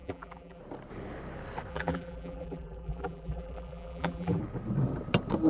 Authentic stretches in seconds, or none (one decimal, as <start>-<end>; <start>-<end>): 0.6-1.7; 4.4-5.5